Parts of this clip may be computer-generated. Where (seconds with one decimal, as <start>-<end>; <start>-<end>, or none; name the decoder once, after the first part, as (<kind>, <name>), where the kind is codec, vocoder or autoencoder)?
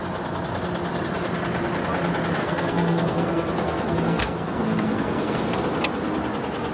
2.4-5.6 (codec, SNAC)